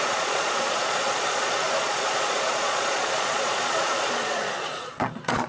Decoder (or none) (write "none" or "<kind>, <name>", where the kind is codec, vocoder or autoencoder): vocoder, Vocos